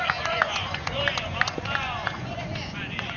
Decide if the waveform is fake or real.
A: fake